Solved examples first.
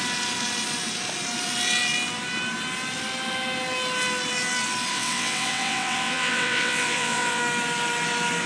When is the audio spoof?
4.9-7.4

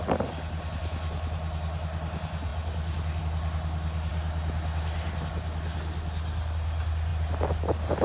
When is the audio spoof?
none

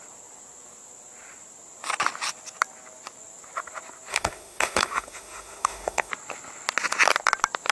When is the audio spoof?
4.1-6.1

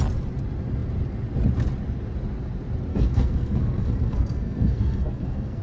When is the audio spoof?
2.9-5.6

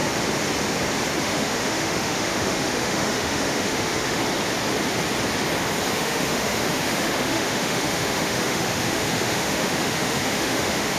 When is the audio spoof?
1.2-4.2; 5.9-11.0